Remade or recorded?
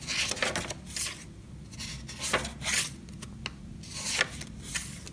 recorded